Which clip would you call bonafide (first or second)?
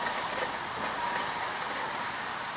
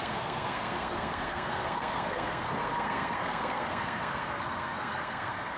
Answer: first